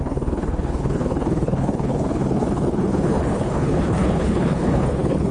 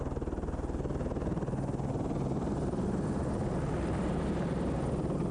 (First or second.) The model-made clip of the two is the first